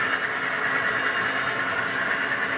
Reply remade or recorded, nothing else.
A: recorded